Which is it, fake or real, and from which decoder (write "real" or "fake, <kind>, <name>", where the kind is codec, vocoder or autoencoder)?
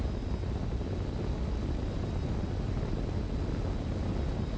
real